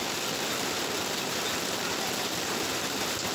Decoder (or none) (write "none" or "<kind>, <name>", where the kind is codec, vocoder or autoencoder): none